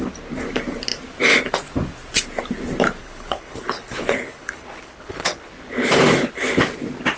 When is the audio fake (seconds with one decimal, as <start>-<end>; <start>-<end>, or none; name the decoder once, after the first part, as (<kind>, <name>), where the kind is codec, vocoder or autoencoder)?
3.0-5.5 (codec, HILCodec)